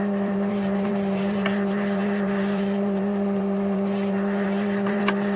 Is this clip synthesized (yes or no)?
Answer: yes